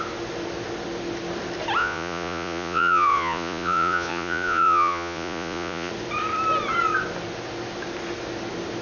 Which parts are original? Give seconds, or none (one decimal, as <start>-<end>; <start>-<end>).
0.0-1.8; 5.9-8.8